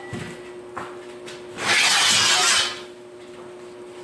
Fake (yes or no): no